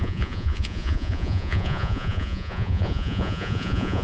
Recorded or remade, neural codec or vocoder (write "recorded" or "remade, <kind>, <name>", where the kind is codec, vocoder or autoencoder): remade, vocoder, Vocos